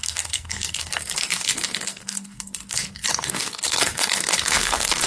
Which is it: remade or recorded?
remade